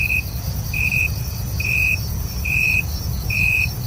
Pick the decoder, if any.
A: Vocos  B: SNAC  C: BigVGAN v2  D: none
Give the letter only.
A